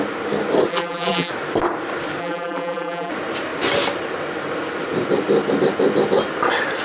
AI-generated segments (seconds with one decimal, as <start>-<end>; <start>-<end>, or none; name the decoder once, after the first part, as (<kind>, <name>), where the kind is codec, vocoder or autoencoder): 0.7-1.3 (vocoder, BigVGAN v2); 2.2-3.1